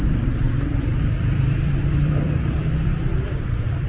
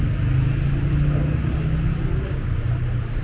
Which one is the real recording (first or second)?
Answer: second